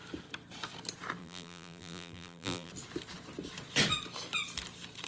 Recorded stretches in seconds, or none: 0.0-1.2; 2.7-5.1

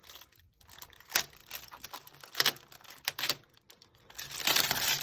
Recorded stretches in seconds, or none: 0.0-5.0

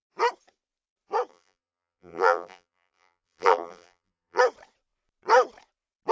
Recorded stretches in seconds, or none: 0.0-1.3; 4.4-6.1

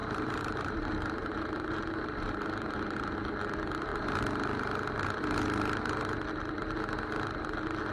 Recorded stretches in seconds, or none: 3.1-7.9

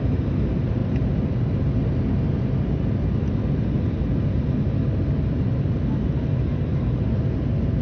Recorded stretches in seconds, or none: 0.0-7.8

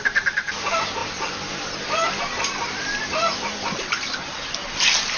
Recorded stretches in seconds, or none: none

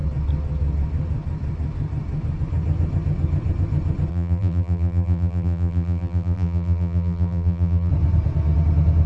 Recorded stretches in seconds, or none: 0.0-4.1; 7.9-9.1